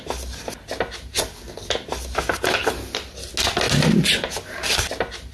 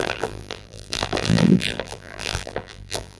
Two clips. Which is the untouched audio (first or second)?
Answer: first